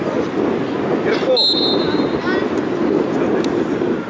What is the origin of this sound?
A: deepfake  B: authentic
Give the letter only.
B